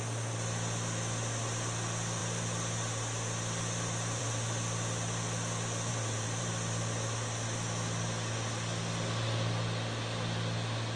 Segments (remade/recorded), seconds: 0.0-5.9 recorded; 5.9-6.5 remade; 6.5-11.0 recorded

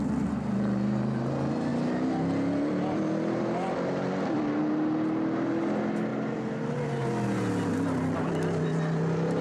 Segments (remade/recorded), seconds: 0.0-1.7 recorded; 1.7-4.6 remade; 4.6-9.4 recorded